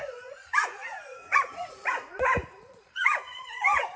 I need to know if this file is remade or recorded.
remade